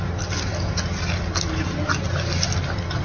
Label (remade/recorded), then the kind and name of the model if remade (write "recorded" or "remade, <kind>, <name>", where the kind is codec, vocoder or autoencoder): recorded